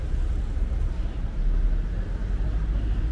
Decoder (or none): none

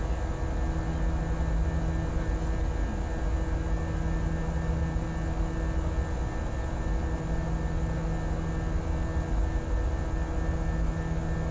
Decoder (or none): none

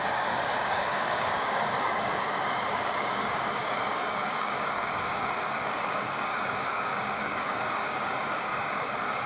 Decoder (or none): codec, DAC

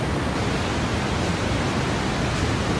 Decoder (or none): none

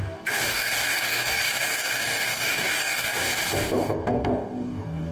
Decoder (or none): codec, DAC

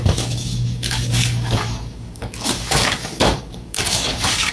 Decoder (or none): codec, DAC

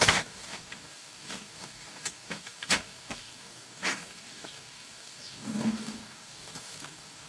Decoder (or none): codec, DAC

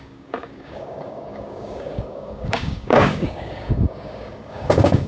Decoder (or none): codec, DAC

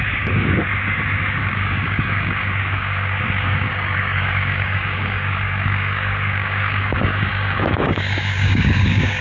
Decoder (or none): codec, DAC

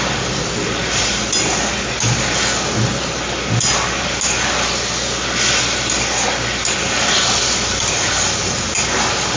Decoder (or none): none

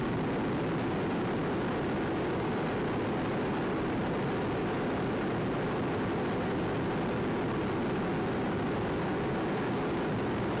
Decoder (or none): none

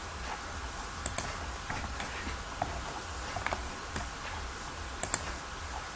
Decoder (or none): none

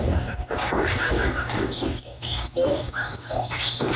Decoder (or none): codec, DAC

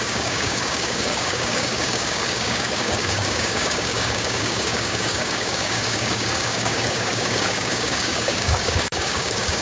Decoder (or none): codec, DAC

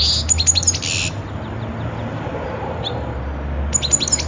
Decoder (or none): none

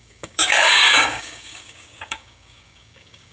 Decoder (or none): codec, DAC